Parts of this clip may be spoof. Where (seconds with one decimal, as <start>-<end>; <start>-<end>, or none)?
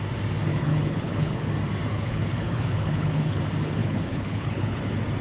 0.5-1.5; 1.9-3.4; 3.8-4.8